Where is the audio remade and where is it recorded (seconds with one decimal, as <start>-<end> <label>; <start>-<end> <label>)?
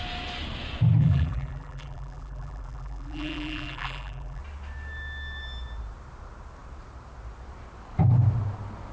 0.0-1.0 recorded; 1.0-4.4 remade; 4.4-8.9 recorded